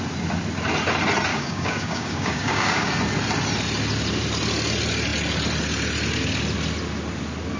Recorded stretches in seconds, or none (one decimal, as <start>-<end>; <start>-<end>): 0.0-1.3; 2.9-7.6